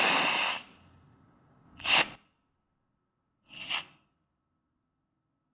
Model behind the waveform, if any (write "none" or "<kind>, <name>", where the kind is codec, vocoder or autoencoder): none